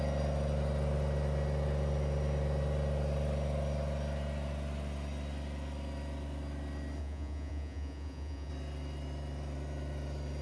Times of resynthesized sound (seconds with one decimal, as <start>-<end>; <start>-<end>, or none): 7.0-8.5